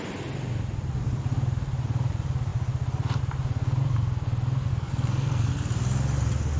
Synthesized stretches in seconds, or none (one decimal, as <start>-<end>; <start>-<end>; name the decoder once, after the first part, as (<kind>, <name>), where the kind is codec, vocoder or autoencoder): 4.7-5.5 (codec, SNAC)